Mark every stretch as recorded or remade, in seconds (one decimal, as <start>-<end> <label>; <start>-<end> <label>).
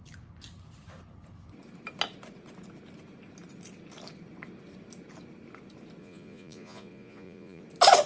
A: 0.0-6.0 recorded; 6.0-7.6 remade; 7.6-8.1 recorded